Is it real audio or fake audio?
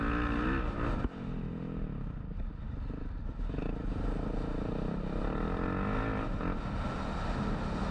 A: real